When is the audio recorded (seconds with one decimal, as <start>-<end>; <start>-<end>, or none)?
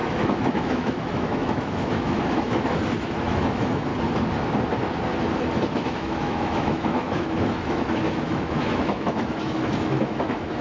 3.9-5.7